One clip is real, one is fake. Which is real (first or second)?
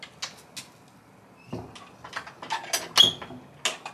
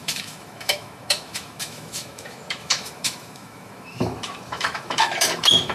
first